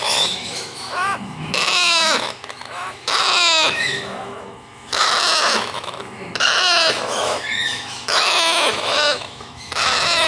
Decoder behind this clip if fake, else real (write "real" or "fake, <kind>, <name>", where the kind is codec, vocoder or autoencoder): fake, autoencoder, DAC-VAE